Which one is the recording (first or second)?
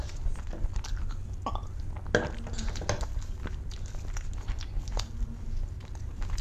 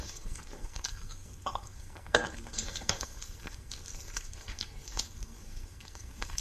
first